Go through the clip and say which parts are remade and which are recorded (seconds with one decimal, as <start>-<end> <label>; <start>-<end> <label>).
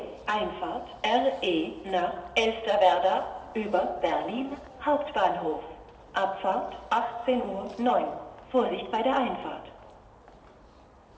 0.0-3.5 recorded; 3.5-5.8 remade; 5.8-11.2 recorded